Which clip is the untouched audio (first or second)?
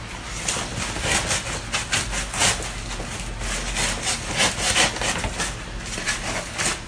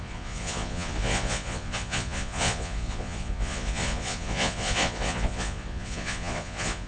first